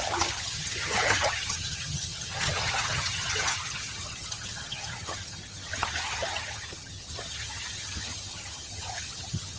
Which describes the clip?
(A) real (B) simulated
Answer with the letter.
B